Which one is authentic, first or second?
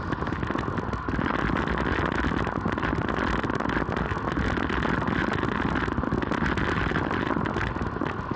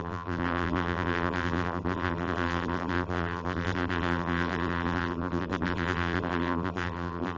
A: first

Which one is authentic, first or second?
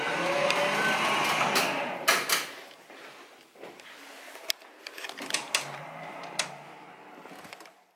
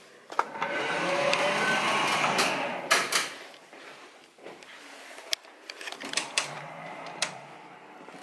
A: first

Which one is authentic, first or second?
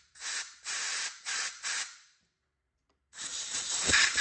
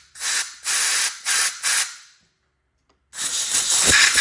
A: second